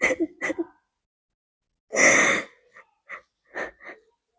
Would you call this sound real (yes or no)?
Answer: yes